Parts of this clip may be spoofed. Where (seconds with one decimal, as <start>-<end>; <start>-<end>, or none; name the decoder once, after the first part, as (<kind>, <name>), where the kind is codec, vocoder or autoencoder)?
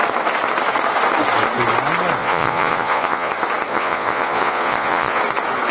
2.2-3.3 (vocoder, Vocos); 3.7-5.2